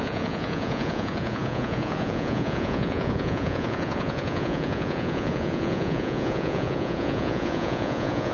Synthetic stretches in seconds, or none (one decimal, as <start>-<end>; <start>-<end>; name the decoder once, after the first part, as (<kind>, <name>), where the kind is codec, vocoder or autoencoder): 0.0-8.3 (vocoder, Vocos)